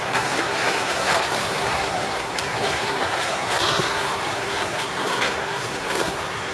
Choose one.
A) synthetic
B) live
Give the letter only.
A